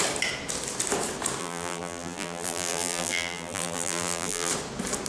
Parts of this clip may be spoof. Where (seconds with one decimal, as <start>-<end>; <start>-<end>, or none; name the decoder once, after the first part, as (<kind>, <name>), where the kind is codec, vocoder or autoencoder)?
1.4-4.5 (vocoder, BigVGAN v2)